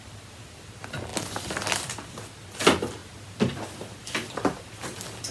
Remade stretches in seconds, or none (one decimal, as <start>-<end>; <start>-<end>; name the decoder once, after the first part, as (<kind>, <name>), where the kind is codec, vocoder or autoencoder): none